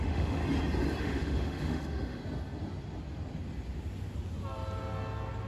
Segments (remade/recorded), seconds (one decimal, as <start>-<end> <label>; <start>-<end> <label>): 0.0-0.4 remade; 0.4-1.0 recorded; 1.0-2.2 remade; 2.2-5.5 recorded